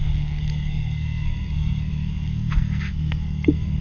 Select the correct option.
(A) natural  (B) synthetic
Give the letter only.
B